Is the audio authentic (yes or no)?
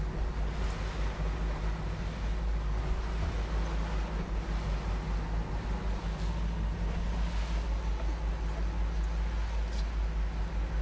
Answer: yes